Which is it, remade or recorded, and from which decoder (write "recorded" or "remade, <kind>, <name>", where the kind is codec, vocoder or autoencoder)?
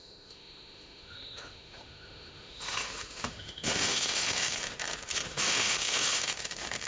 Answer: remade, autoencoder, DAC-VAE